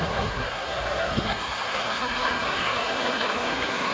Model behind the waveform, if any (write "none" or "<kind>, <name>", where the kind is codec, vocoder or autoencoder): codec, SNAC